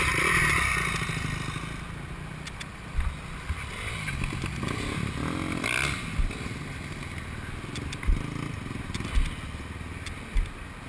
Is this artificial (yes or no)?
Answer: no